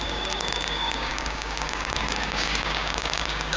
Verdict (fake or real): fake